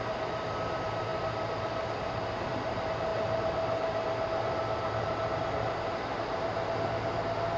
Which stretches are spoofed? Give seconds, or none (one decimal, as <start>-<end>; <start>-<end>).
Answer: none